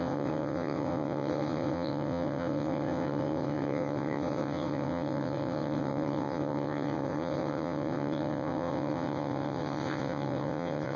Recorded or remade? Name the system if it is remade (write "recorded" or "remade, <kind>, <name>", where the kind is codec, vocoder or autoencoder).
remade, vocoder, WaveNeXt